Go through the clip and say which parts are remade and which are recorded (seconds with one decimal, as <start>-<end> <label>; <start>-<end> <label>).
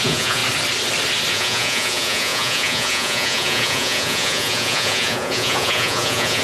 0.0-0.4 remade; 0.4-1.3 recorded; 1.3-6.4 remade